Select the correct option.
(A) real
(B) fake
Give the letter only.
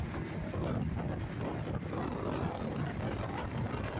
A